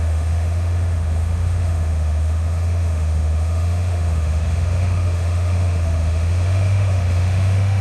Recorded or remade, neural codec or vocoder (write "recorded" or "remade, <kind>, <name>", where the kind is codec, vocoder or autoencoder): remade, autoencoder, DAC-VAE